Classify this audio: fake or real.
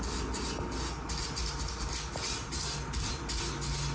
real